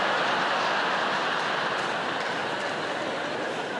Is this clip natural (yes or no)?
yes